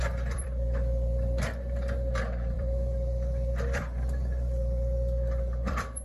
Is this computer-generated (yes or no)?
yes